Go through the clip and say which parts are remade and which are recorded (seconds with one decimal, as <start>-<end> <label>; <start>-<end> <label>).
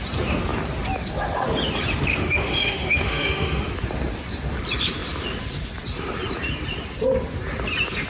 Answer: 0.0-2.1 recorded; 2.1-3.6 remade; 3.6-8.1 recorded